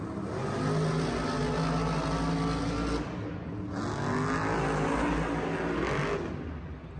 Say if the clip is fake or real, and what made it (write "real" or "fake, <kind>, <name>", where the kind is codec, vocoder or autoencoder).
real